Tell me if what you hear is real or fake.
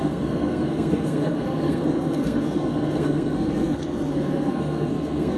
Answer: fake